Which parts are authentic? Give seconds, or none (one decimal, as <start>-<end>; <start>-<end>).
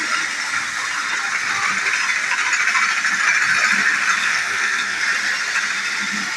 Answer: 0.0-4.2; 5.0-6.4